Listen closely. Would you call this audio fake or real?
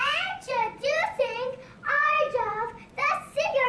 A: fake